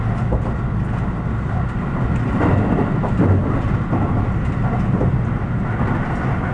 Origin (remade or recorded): recorded